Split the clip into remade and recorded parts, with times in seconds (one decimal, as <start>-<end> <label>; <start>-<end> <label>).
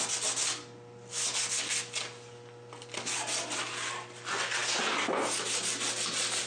0.0-6.5 recorded